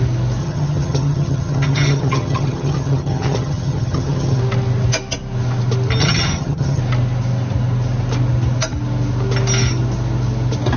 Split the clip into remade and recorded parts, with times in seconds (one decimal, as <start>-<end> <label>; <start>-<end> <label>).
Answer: 0.0-0.4 recorded; 0.4-4.4 remade; 4.4-6.0 recorded; 6.0-6.8 remade; 6.8-10.8 recorded